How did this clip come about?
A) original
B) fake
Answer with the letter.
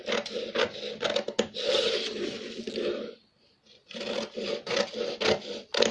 A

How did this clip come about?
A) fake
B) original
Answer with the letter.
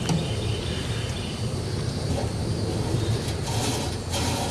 B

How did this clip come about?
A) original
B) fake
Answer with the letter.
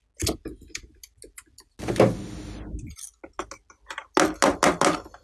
A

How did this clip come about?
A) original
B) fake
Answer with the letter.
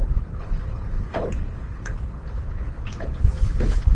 B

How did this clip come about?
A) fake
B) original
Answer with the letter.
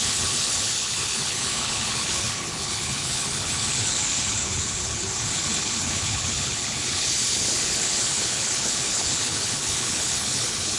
A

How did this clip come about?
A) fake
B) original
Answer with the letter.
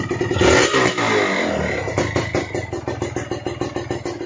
B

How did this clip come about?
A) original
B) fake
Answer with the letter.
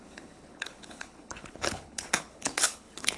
B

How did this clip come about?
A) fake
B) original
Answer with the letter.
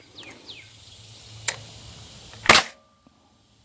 B